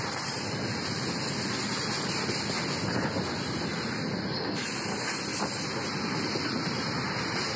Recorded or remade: recorded